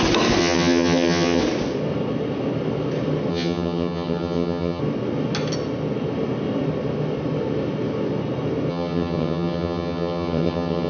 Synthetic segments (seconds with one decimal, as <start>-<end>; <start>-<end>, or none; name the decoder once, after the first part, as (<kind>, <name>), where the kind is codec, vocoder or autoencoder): 0.4-1.4 (vocoder, HiFi-GAN); 3.3-4.8; 8.7-10.9